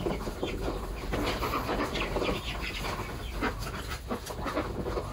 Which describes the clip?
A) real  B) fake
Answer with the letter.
A